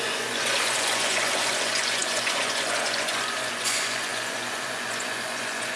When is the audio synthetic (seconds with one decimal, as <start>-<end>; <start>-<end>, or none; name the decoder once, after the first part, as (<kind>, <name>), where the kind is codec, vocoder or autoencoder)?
0.0-5.8 (vocoder, Vocos)